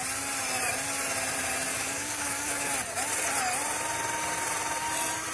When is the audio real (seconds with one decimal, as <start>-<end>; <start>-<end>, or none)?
0.0-1.7; 2.7-5.3